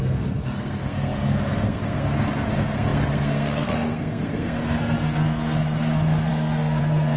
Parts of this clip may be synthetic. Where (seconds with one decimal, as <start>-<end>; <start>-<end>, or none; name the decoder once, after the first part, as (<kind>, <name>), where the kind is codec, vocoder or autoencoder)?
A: 0.0-7.2 (codec, SNAC)